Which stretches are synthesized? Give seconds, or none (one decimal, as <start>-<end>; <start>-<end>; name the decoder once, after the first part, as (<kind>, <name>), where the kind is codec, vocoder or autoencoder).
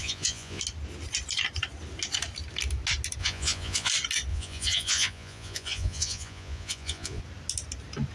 0.0-0.6 (vocoder, Vocos); 3.2-3.9; 4.3-7.2